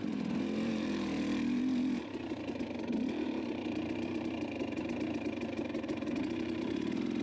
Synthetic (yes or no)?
yes